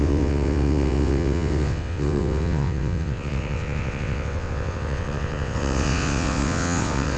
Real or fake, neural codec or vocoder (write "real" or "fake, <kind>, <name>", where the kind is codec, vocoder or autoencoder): fake, vocoder, WaveNeXt